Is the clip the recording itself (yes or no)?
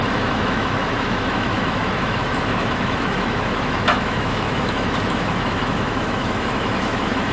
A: no